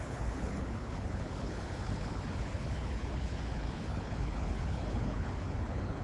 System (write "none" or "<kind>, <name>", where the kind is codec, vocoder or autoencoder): codec, HILCodec